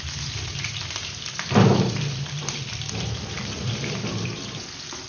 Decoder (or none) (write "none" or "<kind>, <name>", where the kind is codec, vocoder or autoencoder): vocoder, BigVGAN v2